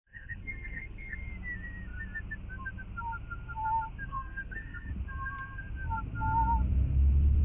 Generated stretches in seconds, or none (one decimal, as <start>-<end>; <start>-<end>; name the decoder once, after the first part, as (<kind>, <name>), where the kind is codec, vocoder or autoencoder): 0.0-1.3 (codec, SNAC); 4.1-4.9